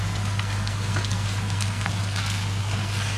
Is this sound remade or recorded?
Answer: remade